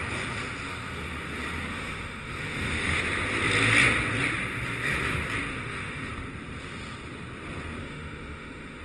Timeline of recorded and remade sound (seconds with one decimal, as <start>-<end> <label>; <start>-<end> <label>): 0.0-1.7 recorded; 1.7-3.0 remade; 3.0-5.5 recorded; 5.5-6.1 remade; 6.1-7.8 recorded; 7.8-8.8 remade